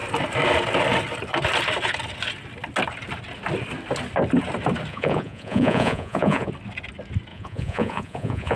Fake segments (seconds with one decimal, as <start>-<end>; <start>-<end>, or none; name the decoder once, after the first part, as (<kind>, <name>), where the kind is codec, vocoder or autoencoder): 4.9-6.5 (vocoder, Vocos); 7.3-8.6